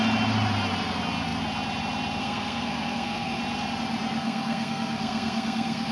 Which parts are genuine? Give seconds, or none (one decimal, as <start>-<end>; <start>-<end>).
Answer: 0.0-2.2; 3.4-4.2